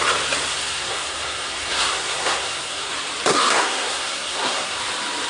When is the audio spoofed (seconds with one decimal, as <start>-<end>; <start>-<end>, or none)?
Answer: 0.5-2.9; 3.3-4.8